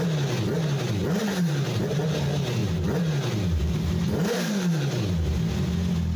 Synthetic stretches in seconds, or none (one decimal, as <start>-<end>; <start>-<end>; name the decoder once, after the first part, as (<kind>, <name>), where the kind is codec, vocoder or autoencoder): 1.2-2.0 (vocoder, BigVGAN v2); 2.6-5.0